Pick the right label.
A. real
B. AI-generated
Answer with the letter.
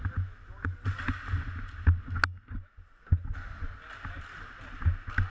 A